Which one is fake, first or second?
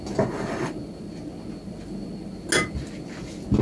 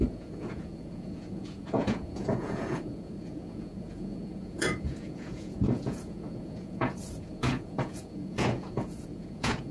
second